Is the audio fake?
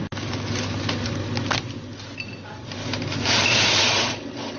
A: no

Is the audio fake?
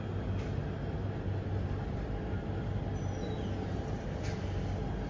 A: no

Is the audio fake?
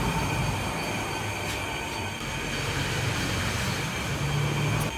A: no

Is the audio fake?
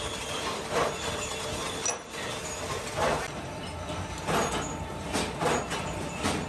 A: no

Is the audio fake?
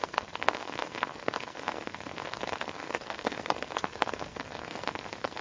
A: yes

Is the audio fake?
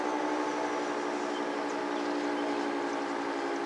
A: no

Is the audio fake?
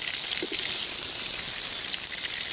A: no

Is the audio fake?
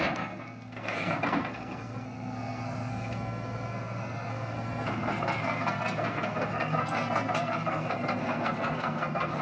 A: yes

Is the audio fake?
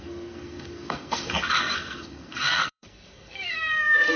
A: yes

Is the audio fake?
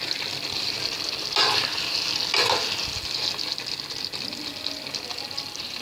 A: no